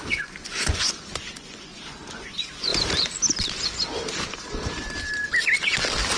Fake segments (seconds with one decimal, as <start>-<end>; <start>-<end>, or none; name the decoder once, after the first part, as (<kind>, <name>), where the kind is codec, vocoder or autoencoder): 0.0-2.7 (vocoder, Vocos)